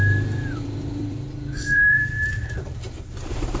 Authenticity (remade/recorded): remade